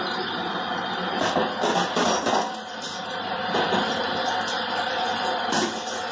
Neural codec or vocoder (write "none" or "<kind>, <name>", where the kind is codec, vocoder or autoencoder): none